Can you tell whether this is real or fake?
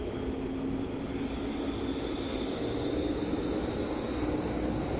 real